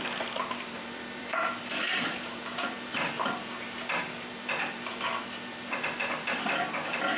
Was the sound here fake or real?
fake